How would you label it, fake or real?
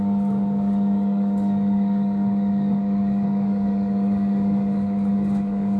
fake